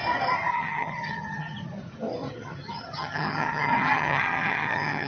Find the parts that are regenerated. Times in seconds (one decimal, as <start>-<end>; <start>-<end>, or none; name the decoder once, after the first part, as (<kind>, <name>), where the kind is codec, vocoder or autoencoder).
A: 0.5-1.6 (vocoder, HiFi-GAN); 2.3-5.1